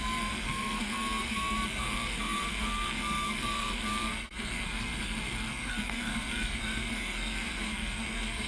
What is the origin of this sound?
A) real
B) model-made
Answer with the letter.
B